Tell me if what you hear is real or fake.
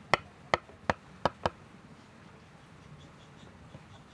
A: real